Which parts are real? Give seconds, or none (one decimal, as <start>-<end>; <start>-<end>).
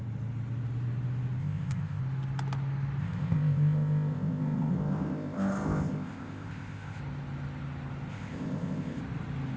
0.0-1.4; 2.0-3.0; 7.0-8.1; 9.0-9.6